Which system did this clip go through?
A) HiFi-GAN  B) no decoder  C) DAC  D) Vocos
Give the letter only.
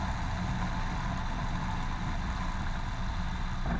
B